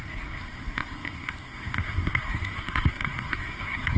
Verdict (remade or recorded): remade